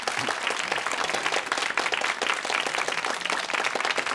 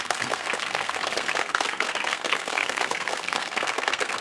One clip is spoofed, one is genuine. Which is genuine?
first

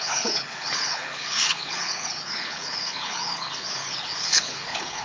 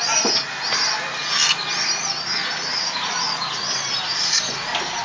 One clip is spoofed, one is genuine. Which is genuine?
second